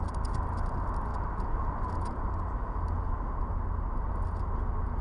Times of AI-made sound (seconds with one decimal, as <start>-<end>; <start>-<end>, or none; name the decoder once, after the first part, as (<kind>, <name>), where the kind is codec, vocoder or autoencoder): none